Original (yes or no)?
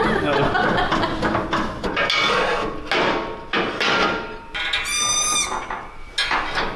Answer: yes